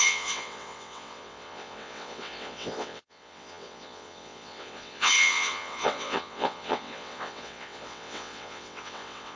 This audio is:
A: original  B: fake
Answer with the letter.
B